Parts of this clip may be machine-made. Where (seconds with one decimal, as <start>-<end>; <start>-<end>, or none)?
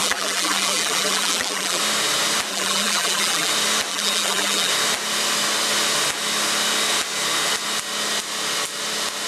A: 0.0-1.8; 2.5-3.5; 3.9-4.7